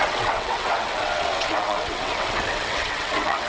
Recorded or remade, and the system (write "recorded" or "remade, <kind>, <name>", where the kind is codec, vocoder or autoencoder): remade, vocoder, WaveNeXt